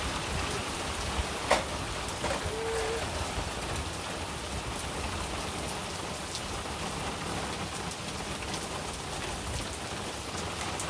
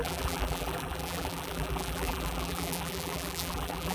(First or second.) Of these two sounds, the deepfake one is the second